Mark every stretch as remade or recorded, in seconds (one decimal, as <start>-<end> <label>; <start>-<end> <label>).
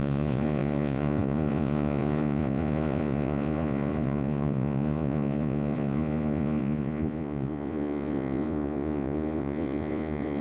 0.0-10.4 remade